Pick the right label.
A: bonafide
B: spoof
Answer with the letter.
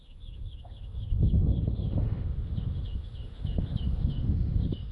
B